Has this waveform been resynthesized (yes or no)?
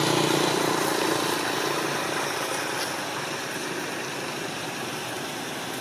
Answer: no